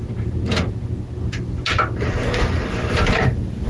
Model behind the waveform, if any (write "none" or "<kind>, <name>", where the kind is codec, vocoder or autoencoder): none